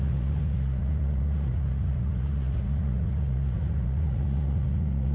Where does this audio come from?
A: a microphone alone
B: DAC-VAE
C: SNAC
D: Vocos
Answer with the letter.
D